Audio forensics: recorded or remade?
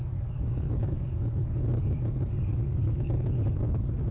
remade